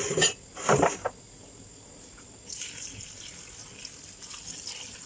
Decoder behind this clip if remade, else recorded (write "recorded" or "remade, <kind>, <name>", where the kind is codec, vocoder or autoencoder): recorded